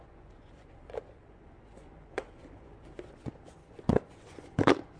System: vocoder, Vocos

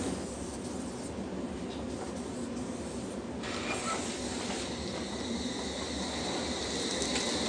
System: none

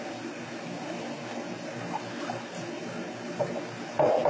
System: none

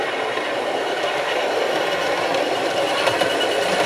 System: none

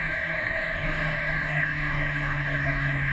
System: codec, DAC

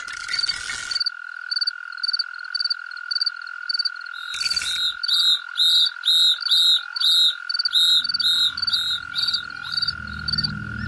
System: none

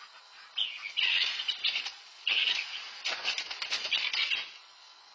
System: none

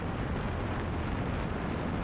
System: none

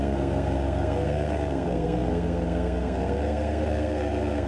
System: codec, SNAC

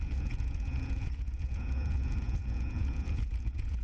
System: vocoder, Vocos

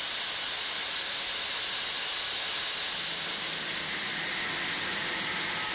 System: none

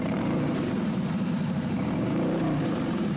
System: vocoder, BigVGAN v2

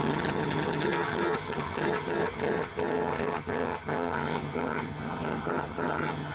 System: vocoder, HiFi-GAN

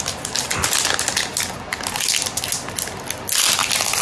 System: none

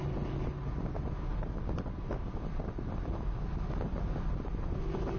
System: none